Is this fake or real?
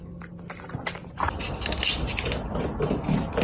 real